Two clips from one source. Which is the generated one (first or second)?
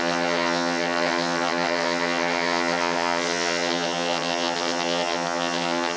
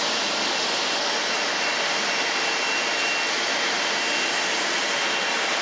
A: first